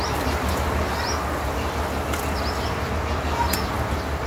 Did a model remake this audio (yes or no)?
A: no